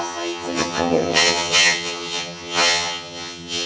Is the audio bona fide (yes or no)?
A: no